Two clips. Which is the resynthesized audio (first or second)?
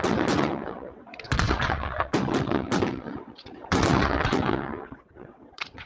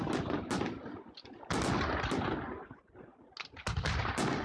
first